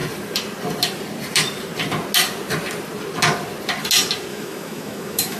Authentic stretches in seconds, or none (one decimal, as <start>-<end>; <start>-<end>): 0.0-4.3